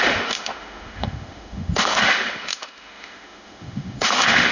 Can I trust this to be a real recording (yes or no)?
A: no